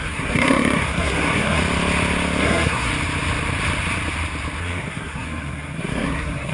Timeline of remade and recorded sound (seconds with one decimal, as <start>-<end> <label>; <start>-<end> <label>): 0.0-1.6 remade; 1.6-2.4 recorded; 2.4-2.9 remade; 2.9-4.6 recorded; 4.6-6.5 remade

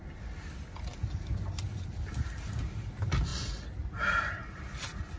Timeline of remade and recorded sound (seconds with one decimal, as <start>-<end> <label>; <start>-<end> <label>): 0.0-5.2 recorded

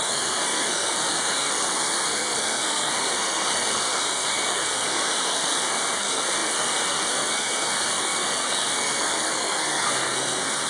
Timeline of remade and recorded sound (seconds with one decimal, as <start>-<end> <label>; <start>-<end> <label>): 0.0-10.7 remade

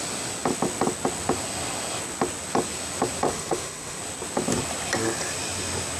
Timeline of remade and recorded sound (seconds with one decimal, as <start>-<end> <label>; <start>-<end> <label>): 0.0-3.3 recorded; 3.3-4.0 remade; 4.0-6.0 recorded

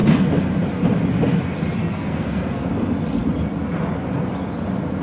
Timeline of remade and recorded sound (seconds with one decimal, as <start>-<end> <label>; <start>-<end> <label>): 0.0-1.8 recorded; 1.8-2.7 remade; 2.7-5.0 recorded

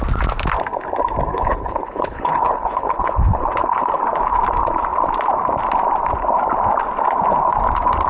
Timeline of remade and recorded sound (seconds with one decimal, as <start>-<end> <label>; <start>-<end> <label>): 0.0-1.3 recorded; 1.3-4.0 remade; 4.0-8.1 recorded

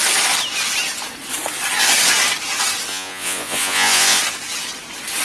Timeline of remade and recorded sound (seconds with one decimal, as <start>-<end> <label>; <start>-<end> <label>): 0.0-2.9 recorded; 2.9-4.2 remade; 4.2-5.2 recorded